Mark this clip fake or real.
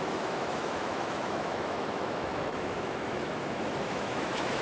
fake